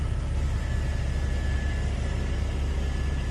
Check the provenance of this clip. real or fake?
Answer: real